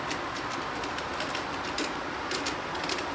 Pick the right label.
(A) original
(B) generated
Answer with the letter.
A